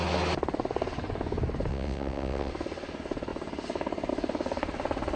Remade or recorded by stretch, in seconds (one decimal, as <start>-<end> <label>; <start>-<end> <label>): 0.0-1.7 recorded; 1.7-2.5 remade; 2.5-5.2 recorded